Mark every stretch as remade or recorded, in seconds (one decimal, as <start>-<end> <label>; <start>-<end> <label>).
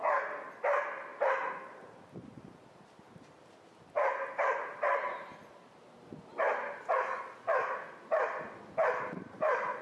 0.0-1.1 recorded; 1.1-3.4 remade; 3.4-9.8 recorded